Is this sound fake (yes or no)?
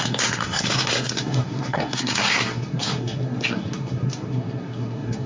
yes